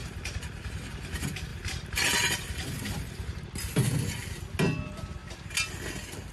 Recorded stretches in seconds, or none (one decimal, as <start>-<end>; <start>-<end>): 0.9-1.5; 3.4-6.3